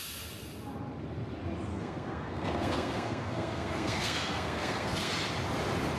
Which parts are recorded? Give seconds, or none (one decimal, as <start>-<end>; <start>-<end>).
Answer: 0.0-1.7; 5.1-6.0

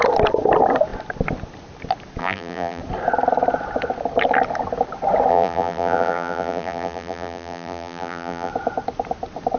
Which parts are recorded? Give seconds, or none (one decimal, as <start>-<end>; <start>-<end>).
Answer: 0.0-2.2; 2.8-5.3; 8.5-9.6

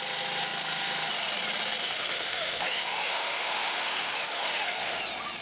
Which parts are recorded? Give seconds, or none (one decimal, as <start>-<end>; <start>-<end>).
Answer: 0.0-1.8; 5.0-5.4

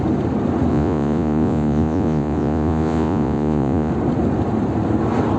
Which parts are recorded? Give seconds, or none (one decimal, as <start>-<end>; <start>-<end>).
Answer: 0.0-0.7; 3.9-5.4

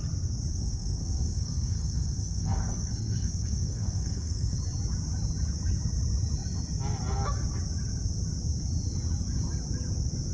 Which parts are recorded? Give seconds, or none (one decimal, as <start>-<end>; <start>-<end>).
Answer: 0.0-0.5; 4.6-10.3